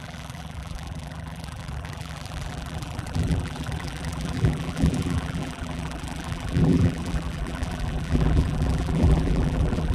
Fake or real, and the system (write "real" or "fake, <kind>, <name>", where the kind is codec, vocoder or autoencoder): fake, vocoder, BigVGAN v2